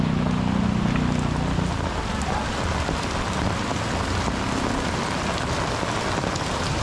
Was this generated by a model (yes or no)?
no